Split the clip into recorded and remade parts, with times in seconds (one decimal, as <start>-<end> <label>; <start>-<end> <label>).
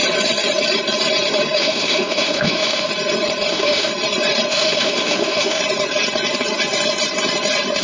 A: 0.0-1.6 recorded; 1.6-2.9 remade; 2.9-3.5 recorded; 3.5-3.9 remade; 3.9-4.5 recorded; 4.5-5.6 remade; 5.6-7.8 recorded